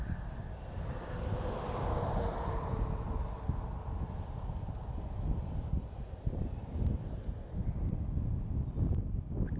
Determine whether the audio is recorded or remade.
recorded